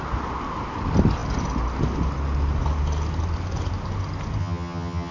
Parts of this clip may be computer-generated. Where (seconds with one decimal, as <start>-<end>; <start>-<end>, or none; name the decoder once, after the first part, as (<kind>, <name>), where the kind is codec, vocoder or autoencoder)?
4.4-5.1 (vocoder, HiFi-GAN)